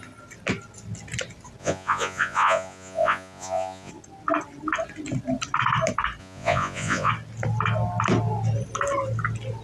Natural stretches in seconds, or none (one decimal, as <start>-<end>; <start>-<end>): 0.0-1.6; 3.9-6.2; 7.1-9.6